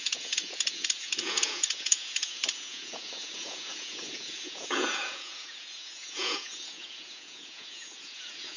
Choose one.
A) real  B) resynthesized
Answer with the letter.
B